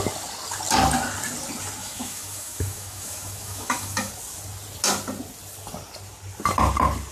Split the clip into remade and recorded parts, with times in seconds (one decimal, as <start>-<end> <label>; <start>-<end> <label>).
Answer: 0.0-1.8 recorded; 1.8-4.1 remade; 4.1-7.1 recorded